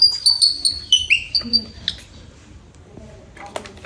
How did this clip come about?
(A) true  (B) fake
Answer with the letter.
A